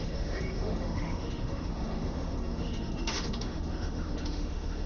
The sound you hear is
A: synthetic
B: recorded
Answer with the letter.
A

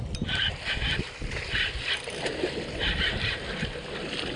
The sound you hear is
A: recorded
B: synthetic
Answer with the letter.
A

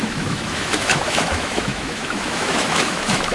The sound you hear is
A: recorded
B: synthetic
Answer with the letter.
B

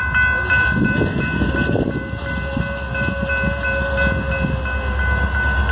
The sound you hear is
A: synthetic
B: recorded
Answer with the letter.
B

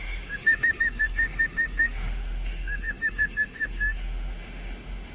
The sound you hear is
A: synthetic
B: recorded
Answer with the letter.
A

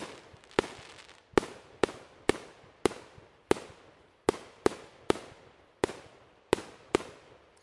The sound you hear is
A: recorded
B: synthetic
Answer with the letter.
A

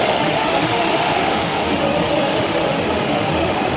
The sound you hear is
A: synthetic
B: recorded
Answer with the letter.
A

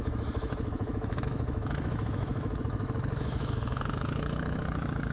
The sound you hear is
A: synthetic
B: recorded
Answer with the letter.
A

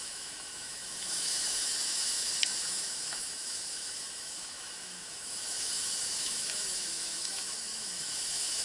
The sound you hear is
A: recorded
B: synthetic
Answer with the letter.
B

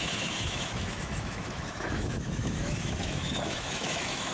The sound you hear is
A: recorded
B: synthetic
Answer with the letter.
B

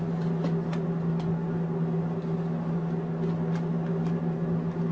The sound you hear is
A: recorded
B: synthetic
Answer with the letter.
A